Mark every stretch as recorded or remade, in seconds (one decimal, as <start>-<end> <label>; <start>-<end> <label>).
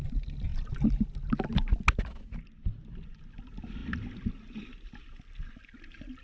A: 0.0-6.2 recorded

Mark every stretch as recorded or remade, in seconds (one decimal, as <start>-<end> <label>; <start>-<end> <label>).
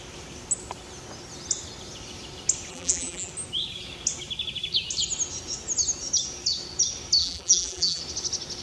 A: 0.0-2.7 recorded; 2.7-3.3 remade; 3.3-7.2 recorded; 7.2-8.0 remade; 8.0-8.6 recorded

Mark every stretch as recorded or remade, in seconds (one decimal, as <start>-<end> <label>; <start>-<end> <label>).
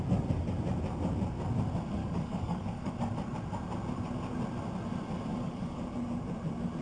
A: 0.0-2.0 recorded; 2.0-2.9 remade; 2.9-5.3 recorded; 5.3-5.8 remade; 5.8-6.8 recorded